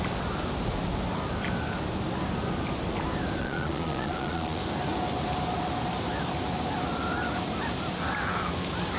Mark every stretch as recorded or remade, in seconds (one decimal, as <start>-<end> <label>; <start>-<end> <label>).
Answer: 0.0-3.4 recorded; 3.4-4.6 remade; 4.6-9.0 recorded